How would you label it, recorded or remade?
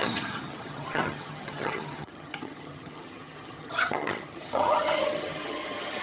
remade